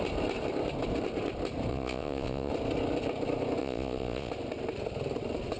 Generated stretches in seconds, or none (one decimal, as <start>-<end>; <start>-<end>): 1.7-2.5; 3.6-4.3